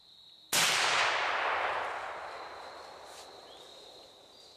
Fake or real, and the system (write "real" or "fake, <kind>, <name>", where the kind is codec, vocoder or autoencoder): real